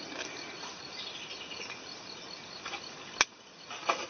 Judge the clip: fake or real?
real